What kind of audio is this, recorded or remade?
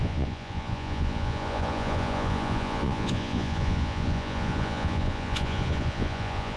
remade